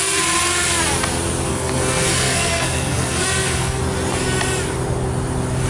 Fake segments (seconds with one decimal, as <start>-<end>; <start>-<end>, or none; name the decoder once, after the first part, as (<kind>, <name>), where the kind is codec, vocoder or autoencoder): 1.5-3.8 (codec, SNAC)